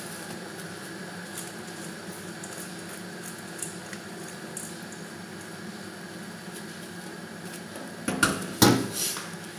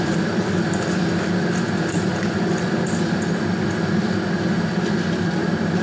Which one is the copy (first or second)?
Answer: second